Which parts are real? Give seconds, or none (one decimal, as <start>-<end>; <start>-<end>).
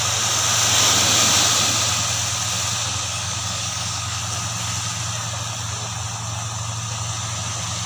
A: 0.0-3.1; 4.2-7.9